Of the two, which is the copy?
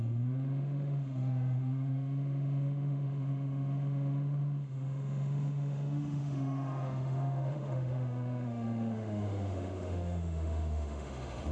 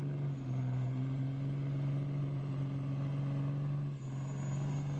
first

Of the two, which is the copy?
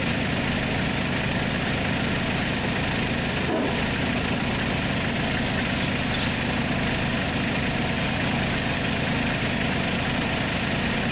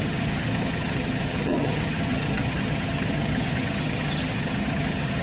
second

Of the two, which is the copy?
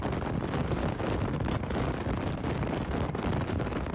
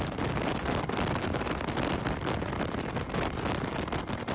first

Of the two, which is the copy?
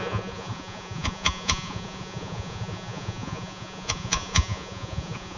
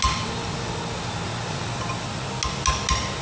first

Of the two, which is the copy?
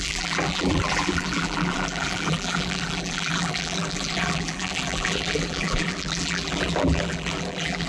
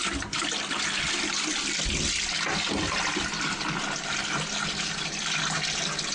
first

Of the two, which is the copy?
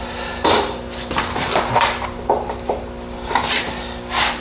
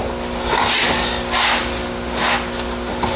first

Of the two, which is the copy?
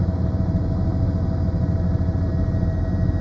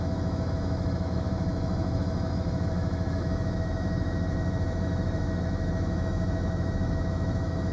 second